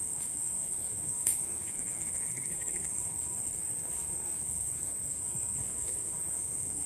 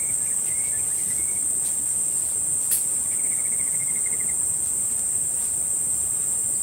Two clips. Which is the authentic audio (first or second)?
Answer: second